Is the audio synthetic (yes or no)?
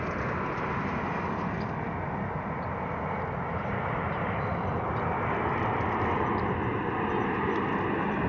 no